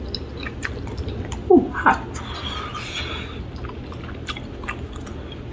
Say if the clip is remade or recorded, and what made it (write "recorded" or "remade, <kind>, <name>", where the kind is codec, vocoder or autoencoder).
recorded